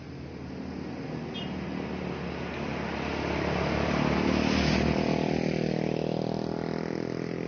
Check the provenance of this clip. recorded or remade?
recorded